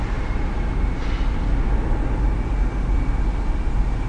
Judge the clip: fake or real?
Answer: real